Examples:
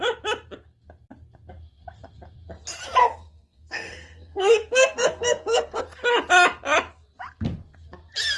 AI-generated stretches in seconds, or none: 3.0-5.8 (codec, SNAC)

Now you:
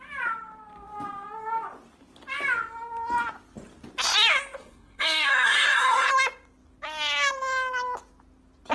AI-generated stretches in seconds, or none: 4.6-6.1 (codec, SNAC)

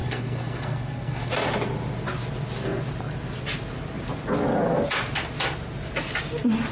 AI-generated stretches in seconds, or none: 0.0-1.3 (codec, SNAC)

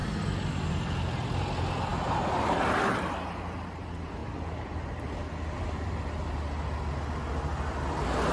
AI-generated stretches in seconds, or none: none

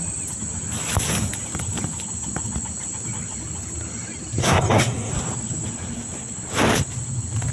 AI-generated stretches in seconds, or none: 4.4-5.1 (codec, SNAC)

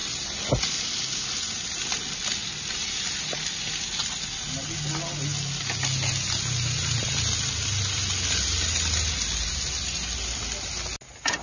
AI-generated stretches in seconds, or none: none

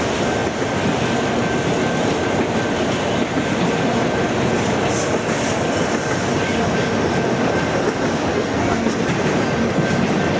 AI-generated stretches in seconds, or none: 8.3-8.9 (codec, SNAC)